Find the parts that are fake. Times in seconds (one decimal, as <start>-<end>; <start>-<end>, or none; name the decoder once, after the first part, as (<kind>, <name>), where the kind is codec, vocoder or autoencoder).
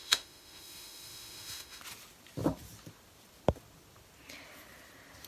0.0-1.8 (autoencoder, DAC-VAE)